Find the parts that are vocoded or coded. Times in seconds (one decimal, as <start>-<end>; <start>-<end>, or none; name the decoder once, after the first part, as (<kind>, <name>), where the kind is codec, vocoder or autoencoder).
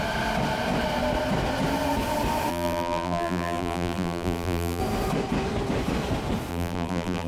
2.5-4.8 (vocoder, BigVGAN v2); 6.5-7.3